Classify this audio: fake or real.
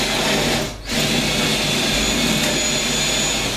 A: real